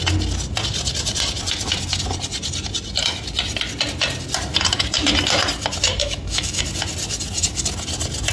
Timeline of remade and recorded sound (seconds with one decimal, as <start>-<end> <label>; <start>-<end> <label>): 0.0-6.0 recorded; 6.0-6.6 remade; 6.6-8.3 recorded